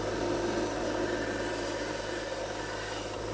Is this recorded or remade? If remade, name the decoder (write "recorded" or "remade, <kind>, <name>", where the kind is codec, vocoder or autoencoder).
recorded